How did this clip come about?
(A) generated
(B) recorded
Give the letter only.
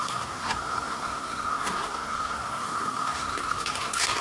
A